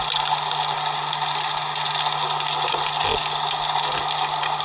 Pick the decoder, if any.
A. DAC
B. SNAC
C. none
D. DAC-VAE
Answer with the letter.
C